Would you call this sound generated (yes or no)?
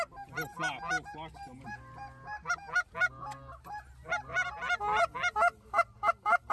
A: no